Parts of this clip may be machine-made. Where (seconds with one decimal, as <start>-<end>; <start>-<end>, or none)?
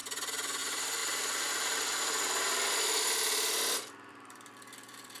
0.6-5.2